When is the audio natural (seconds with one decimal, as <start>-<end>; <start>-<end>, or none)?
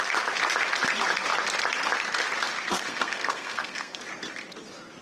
0.0-2.7; 4.0-5.0